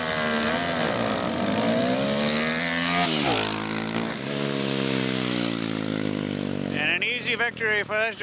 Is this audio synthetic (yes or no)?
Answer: no